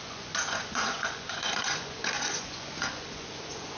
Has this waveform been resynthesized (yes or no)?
yes